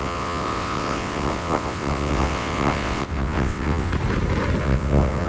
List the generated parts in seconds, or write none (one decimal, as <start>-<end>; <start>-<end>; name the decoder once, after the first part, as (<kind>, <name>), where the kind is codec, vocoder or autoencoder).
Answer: 0.0-3.9 (vocoder, WaveNeXt); 4.6-5.3